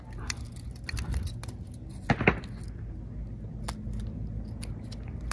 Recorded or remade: recorded